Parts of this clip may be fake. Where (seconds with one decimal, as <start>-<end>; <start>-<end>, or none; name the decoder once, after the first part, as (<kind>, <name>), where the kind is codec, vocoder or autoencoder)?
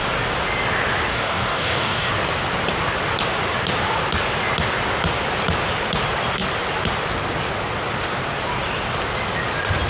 1.1-2.1 (codec, DAC)